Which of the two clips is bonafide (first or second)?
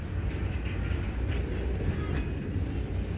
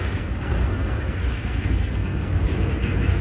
first